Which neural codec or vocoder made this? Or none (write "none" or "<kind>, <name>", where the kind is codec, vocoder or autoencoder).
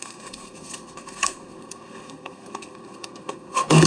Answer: codec, SNAC